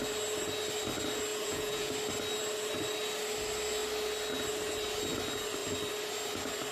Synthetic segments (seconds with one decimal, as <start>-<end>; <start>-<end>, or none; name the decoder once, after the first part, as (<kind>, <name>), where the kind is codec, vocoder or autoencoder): 1.3-1.9 (vocoder, Vocos)